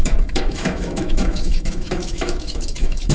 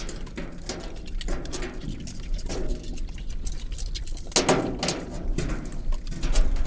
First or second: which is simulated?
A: first